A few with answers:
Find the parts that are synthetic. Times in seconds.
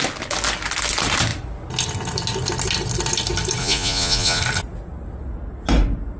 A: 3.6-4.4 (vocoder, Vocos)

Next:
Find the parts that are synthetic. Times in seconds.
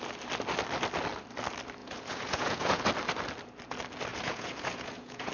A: 1.8-2.8 (vocoder, Vocos); 4.1-5.3